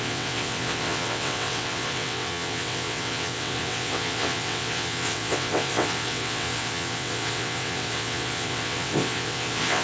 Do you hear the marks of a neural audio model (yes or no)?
yes